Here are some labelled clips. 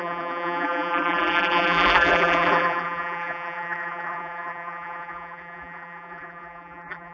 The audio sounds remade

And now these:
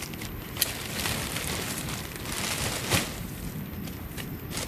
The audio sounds recorded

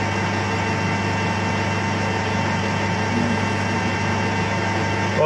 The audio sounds recorded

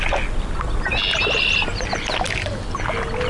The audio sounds recorded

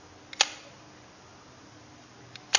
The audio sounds recorded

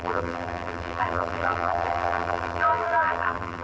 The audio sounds remade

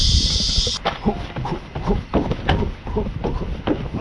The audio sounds recorded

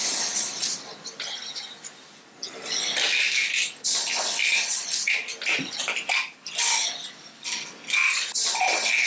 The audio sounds recorded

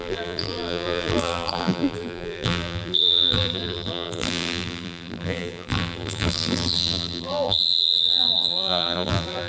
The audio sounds remade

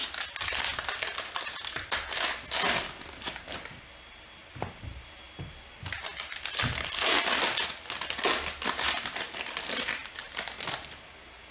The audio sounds recorded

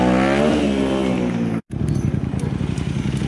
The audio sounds recorded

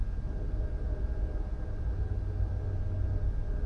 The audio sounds recorded